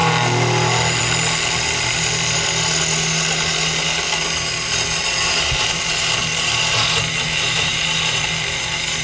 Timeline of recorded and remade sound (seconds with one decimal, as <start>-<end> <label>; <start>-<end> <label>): 0.0-9.0 recorded